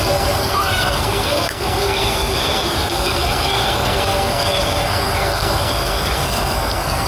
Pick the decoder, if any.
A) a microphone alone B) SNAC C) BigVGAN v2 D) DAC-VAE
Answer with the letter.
B